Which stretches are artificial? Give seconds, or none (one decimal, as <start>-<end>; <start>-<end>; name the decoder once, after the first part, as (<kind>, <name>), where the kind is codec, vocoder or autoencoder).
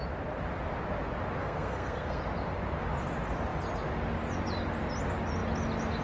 1.4-2.2 (codec, SNAC)